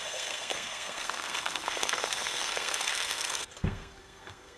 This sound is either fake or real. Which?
fake